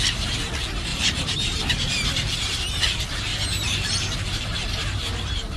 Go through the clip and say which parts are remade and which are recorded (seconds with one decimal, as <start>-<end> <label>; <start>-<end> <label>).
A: 0.0-0.9 recorded; 0.9-1.6 remade; 1.6-3.3 recorded; 3.3-5.6 remade